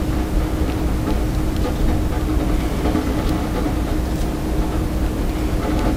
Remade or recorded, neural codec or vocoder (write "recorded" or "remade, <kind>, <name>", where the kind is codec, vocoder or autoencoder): recorded